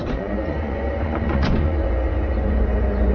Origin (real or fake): fake